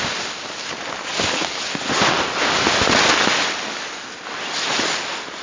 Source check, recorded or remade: recorded